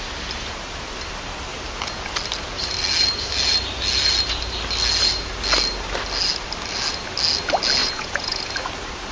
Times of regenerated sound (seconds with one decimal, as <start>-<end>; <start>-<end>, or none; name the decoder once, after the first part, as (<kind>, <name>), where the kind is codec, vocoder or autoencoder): 7.8-8.4 (vocoder, Vocos)

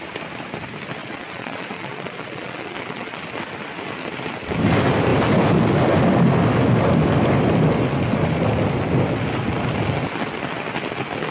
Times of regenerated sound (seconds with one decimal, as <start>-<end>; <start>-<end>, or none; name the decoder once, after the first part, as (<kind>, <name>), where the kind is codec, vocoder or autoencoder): 1.0-3.2 (vocoder, Vocos)

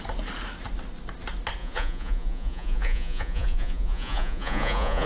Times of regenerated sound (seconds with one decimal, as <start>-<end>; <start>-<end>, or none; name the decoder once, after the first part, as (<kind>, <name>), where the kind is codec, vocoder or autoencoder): 1.6-5.1 (vocoder, Vocos)

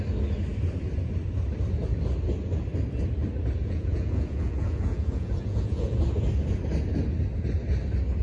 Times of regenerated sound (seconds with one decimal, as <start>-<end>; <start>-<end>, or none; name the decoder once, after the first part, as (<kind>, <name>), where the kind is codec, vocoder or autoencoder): 3.6-6.0 (vocoder, Vocos)

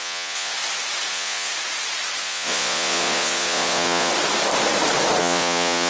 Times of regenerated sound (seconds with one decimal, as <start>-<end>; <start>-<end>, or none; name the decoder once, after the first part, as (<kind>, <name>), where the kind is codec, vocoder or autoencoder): 0.0-0.5 (vocoder, Vocos); 1.1-1.5; 2.2-4.1; 5.2-5.9

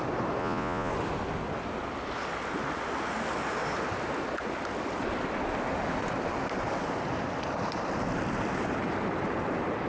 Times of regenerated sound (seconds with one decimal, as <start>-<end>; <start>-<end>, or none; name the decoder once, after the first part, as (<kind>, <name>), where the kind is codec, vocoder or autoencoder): 0.4-0.9 (vocoder, Vocos)

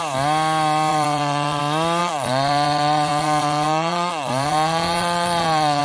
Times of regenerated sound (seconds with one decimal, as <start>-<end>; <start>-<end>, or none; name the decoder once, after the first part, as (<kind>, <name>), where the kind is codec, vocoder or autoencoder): 0.9-1.6 (vocoder, Vocos); 2.0-5.8